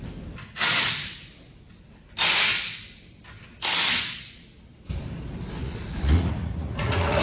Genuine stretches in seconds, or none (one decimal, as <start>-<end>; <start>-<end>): 0.0-5.6